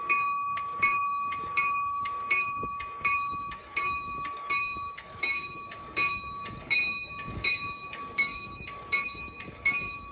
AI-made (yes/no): yes